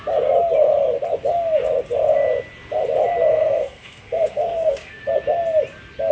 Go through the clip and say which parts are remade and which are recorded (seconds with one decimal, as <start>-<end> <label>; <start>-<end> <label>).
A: 0.0-3.3 recorded; 3.3-5.1 remade; 5.1-6.1 recorded